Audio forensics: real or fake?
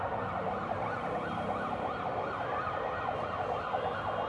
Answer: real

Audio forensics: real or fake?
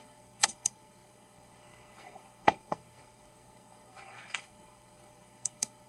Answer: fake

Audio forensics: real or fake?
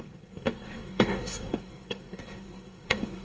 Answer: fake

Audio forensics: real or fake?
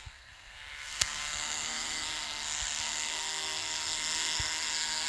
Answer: fake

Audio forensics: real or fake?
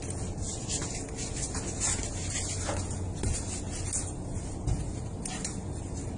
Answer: real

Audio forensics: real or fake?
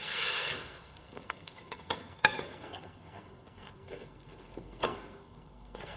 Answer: fake